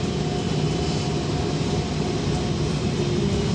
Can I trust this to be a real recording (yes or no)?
yes